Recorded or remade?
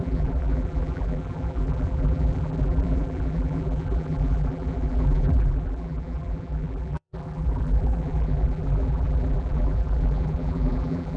remade